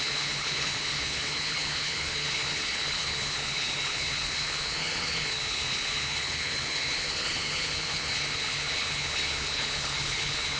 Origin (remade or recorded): remade